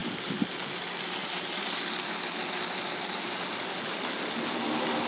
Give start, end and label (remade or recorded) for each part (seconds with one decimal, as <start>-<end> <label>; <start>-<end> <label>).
0.0-5.1 recorded